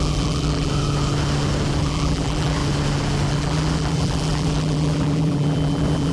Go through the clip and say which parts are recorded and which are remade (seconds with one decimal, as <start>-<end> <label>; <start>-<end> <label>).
0.0-0.7 remade; 0.7-1.8 recorded; 1.8-2.6 remade; 2.6-3.3 recorded; 3.3-6.1 remade